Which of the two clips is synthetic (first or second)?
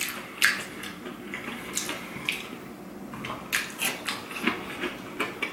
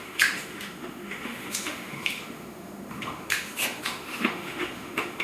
second